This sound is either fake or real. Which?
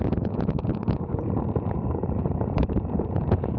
fake